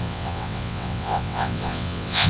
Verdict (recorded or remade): remade